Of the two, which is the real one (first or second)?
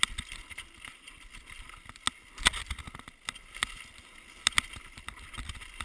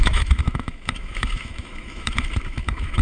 first